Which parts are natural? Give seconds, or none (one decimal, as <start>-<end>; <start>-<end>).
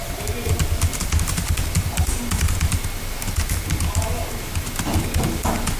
0.0-5.8